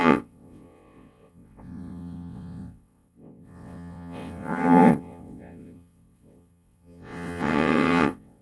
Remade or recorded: remade